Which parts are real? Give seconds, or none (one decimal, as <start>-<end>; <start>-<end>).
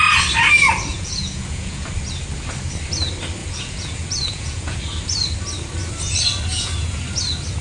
0.0-0.9; 1.9-3.4; 4.8-6.5; 7.0-7.6